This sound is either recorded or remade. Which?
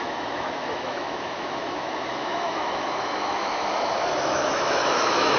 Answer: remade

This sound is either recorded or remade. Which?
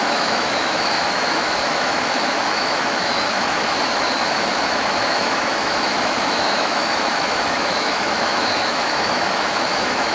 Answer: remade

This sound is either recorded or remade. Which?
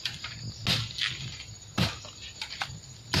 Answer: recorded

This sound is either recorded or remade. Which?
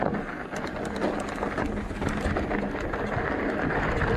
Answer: recorded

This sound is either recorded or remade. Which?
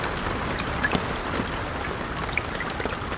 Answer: recorded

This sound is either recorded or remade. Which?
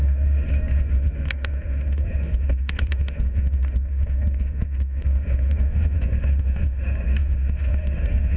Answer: remade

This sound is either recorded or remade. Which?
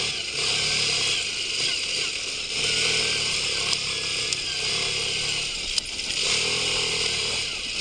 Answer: recorded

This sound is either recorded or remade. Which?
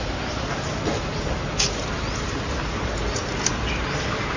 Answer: recorded